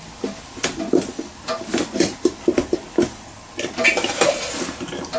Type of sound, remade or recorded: recorded